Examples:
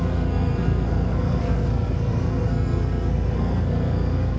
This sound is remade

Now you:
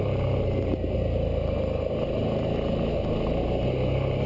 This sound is recorded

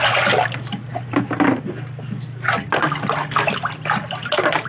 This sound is recorded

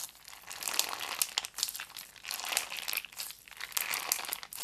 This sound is recorded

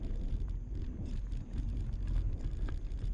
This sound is recorded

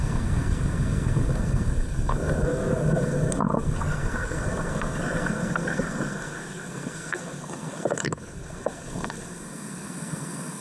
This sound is remade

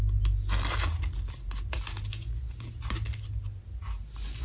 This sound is recorded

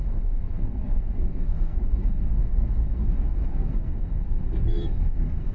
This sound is remade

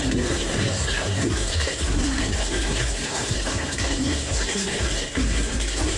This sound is remade